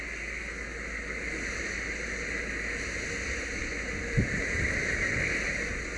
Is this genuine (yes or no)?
yes